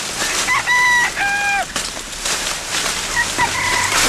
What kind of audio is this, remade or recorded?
recorded